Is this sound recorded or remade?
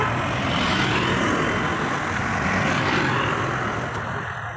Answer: recorded